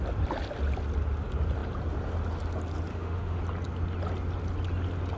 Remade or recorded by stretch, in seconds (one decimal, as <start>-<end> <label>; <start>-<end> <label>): 0.0-2.9 recorded; 2.9-3.4 remade; 3.4-5.2 recorded